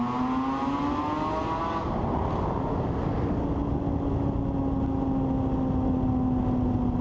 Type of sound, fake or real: real